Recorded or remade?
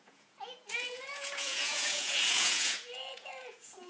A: remade